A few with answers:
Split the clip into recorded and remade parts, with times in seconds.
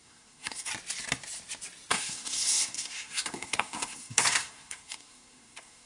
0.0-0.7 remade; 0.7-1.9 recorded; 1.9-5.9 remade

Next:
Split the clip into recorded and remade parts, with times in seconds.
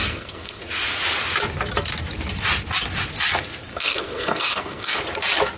0.0-0.6 remade; 0.6-3.7 recorded; 3.7-5.0 remade; 5.0-5.6 recorded